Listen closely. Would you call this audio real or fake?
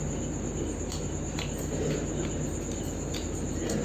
real